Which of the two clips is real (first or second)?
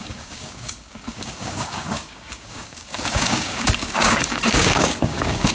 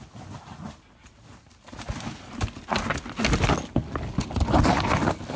second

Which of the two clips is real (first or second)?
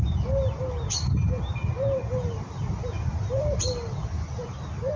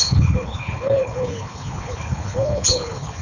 first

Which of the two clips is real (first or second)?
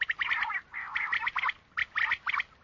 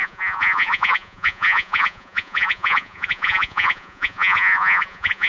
first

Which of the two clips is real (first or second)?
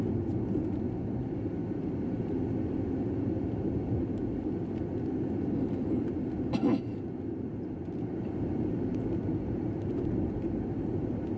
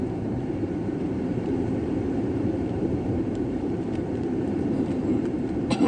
first